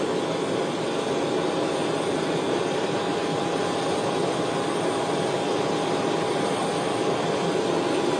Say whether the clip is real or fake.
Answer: real